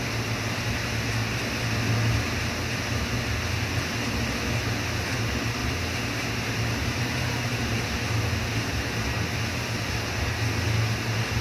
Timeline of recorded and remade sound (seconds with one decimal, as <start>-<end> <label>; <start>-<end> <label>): 0.0-5.6 recorded; 5.6-7.9 remade; 7.9-11.4 recorded